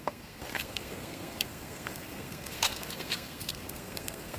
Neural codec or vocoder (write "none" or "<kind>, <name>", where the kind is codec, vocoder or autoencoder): codec, SNAC